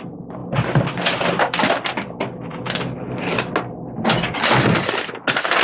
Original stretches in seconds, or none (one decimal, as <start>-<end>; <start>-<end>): 0.0-5.6